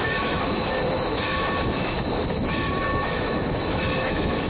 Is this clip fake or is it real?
fake